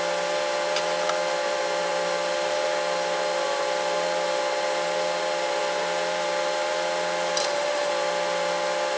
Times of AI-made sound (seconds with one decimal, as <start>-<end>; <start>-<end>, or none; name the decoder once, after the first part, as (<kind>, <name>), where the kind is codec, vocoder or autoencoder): 7.4-7.9 (autoencoder, DAC-VAE)